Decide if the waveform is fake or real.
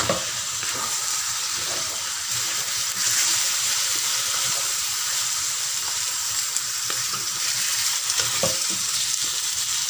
fake